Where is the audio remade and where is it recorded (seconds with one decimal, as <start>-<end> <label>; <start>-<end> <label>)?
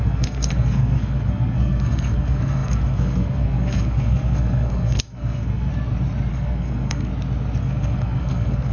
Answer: 0.0-5.7 remade; 5.7-6.3 recorded; 6.3-7.1 remade; 7.1-7.6 recorded; 7.6-8.7 remade